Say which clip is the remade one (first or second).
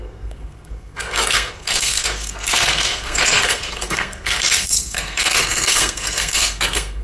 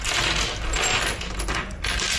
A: first